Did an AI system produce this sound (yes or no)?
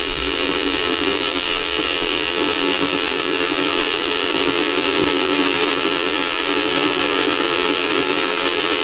yes